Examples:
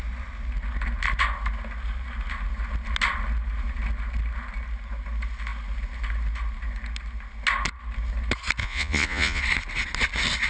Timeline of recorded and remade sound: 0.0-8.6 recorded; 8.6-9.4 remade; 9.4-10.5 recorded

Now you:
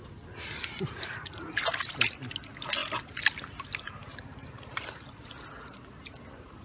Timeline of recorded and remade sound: 0.0-6.6 recorded

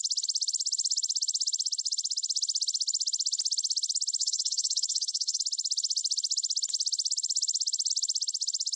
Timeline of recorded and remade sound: 0.0-4.2 recorded; 4.2-5.4 remade; 5.4-8.8 recorded